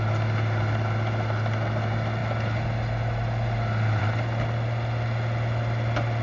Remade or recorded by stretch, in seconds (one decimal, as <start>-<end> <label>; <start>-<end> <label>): 0.0-6.2 recorded